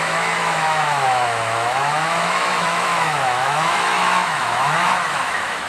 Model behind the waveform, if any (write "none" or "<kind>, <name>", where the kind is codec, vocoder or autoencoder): autoencoder, DAC-VAE